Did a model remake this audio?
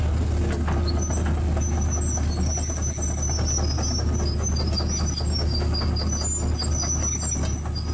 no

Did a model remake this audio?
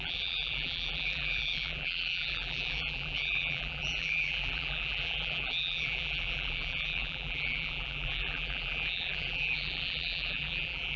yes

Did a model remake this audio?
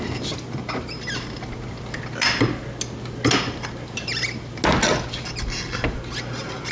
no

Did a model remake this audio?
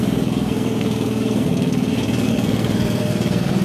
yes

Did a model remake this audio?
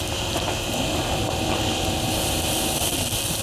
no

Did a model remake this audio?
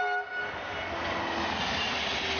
no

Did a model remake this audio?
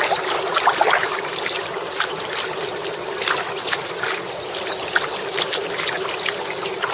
no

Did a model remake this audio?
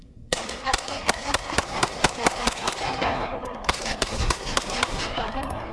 yes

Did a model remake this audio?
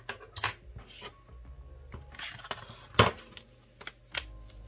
no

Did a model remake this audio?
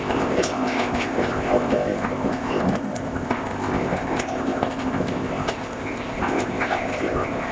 yes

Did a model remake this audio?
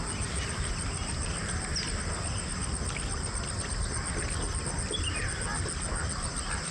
no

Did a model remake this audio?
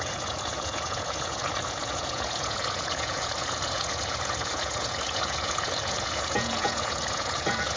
yes